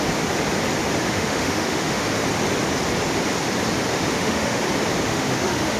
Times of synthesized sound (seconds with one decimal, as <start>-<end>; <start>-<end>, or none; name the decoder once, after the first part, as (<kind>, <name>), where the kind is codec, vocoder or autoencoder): 1.0-2.1 (autoencoder, DAC-VAE); 3.9-4.6; 5.1-5.8